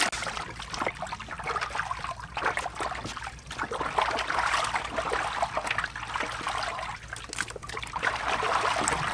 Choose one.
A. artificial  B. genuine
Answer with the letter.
B